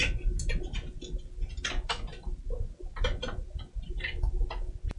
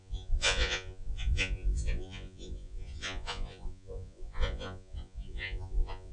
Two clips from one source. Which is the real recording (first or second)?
first